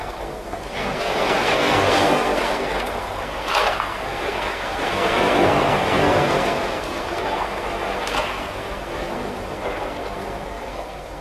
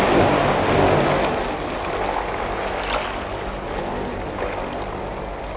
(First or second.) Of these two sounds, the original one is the second